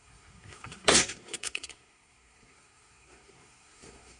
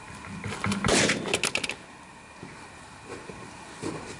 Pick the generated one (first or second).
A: first